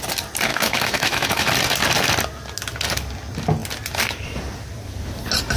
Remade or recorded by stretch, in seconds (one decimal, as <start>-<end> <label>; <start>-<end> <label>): 0.0-0.5 recorded; 0.5-1.5 remade; 1.5-5.6 recorded